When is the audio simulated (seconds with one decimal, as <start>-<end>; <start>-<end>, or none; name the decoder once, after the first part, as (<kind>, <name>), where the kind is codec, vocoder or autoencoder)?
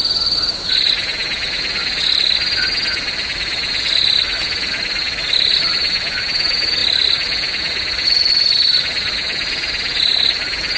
none